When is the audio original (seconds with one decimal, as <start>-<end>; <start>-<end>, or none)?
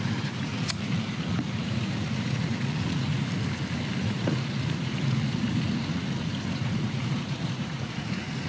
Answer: 3.1-4.0